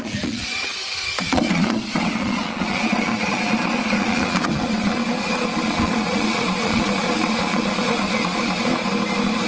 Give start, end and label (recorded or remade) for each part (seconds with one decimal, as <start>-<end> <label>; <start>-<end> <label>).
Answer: 0.0-8.8 remade; 8.8-9.5 recorded